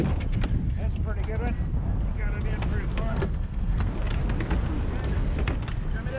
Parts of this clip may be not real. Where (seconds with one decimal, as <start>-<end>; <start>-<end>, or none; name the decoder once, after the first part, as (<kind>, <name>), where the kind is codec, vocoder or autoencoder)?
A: 3.1-3.9 (codec, SNAC)